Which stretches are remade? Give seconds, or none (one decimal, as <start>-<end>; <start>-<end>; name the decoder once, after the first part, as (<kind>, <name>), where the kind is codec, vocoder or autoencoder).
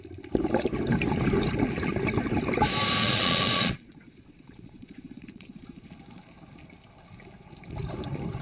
3.0-5.9 (vocoder, Vocos)